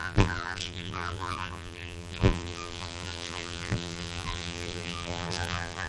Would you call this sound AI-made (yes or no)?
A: yes